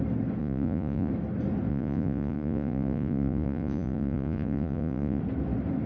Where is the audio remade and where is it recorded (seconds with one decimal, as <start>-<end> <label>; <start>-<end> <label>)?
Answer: 0.0-0.4 recorded; 0.4-1.1 remade; 1.1-1.7 recorded; 1.7-5.2 remade; 5.2-5.9 recorded